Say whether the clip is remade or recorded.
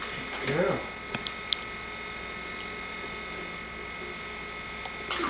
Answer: recorded